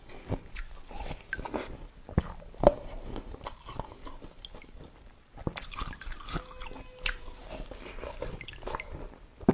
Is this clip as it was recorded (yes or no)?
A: yes